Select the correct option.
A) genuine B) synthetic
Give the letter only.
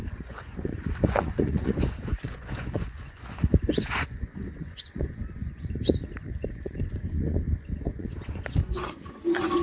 B